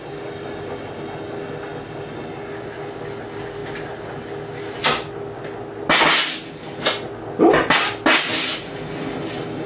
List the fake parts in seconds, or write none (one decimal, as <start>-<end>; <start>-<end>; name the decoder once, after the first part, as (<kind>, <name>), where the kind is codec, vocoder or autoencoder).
none